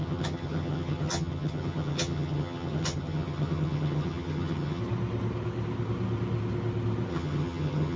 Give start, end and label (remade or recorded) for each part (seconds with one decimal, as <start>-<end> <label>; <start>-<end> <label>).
0.0-4.8 remade; 4.8-7.1 recorded; 7.1-8.0 remade